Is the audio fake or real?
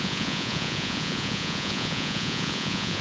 fake